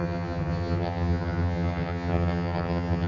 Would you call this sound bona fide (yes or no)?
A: no